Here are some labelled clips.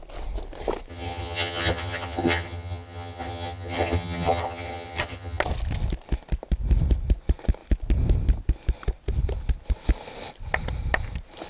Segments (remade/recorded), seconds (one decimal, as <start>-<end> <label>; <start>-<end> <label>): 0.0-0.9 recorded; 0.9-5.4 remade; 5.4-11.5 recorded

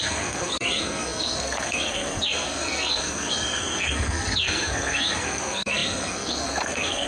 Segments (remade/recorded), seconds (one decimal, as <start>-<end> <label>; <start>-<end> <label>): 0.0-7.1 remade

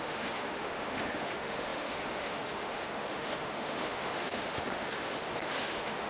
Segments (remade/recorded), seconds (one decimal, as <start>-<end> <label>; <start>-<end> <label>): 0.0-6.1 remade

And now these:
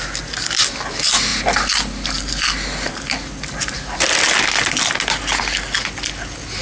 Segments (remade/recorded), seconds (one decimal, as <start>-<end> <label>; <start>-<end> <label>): 0.0-6.6 recorded